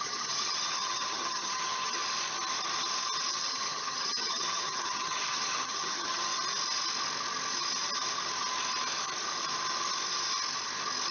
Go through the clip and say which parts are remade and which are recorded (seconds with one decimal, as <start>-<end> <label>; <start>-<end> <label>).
0.0-2.0 remade; 2.0-3.3 recorded; 3.3-6.3 remade; 6.3-11.1 recorded

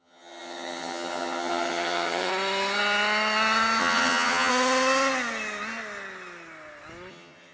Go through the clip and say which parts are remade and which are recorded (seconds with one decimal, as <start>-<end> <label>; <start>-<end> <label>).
0.0-2.3 remade; 2.3-3.8 recorded; 3.8-4.5 remade; 4.5-7.1 recorded; 7.1-7.5 remade

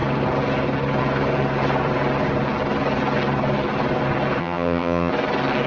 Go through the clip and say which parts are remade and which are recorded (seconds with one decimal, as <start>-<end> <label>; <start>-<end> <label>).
0.0-4.4 recorded; 4.4-5.1 remade; 5.1-5.7 recorded

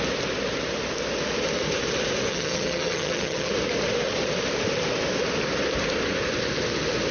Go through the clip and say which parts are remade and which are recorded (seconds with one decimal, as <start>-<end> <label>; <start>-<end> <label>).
0.0-2.3 recorded; 2.3-3.5 remade; 3.5-7.1 recorded

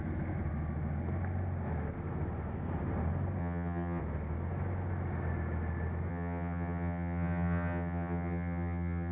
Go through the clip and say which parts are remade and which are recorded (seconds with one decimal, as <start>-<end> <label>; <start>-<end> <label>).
0.0-3.4 recorded; 3.4-4.0 remade; 4.0-6.1 recorded; 6.1-9.1 remade

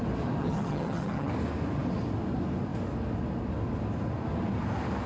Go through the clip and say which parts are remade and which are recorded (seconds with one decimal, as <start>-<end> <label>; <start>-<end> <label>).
0.0-0.4 recorded; 0.4-1.3 remade; 1.3-5.1 recorded

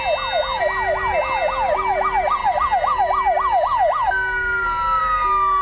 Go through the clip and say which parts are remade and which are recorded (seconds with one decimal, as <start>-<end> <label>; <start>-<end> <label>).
0.0-5.6 recorded

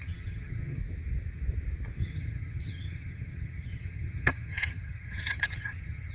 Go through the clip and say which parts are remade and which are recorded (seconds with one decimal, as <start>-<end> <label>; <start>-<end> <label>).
0.0-0.8 remade; 0.8-2.0 recorded; 2.0-6.1 remade